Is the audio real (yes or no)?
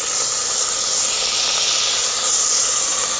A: yes